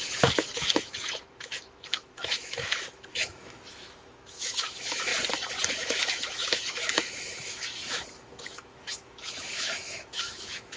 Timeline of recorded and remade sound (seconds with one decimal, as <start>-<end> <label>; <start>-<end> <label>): 0.0-5.1 remade; 5.1-5.7 recorded; 5.7-10.8 remade